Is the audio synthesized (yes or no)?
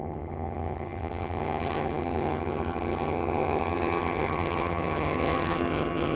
yes